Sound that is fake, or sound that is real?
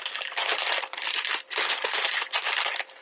real